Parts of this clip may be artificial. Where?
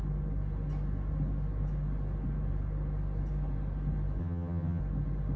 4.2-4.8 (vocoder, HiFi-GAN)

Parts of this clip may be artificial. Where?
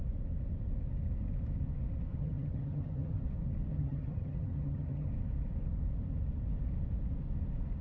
2.1-3.2 (vocoder, HiFi-GAN); 3.7-5.1